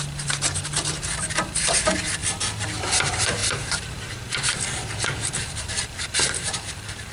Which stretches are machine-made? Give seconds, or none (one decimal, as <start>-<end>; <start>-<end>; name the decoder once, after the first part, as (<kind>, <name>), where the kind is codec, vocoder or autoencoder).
0.0-2.2 (vocoder, BigVGAN v2); 2.9-7.1